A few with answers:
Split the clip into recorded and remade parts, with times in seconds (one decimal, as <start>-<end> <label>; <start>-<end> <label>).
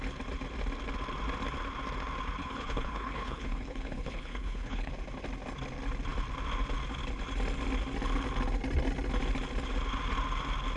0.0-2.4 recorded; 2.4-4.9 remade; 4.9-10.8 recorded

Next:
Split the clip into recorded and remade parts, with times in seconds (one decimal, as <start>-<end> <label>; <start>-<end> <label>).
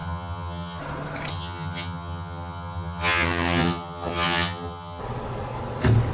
0.0-0.8 remade; 0.8-1.3 recorded; 1.3-5.0 remade; 5.0-6.1 recorded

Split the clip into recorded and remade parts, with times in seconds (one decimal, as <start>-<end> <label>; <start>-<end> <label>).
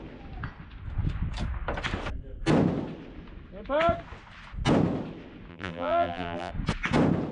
0.0-5.5 recorded; 5.5-6.5 remade; 6.5-7.3 recorded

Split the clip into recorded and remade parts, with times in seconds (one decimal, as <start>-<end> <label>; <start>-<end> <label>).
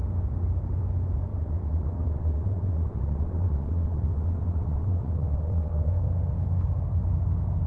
0.0-1.3 recorded; 1.3-5.9 remade; 5.9-7.7 recorded